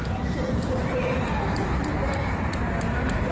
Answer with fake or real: fake